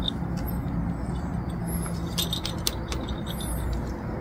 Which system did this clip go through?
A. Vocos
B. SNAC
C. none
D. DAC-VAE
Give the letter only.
C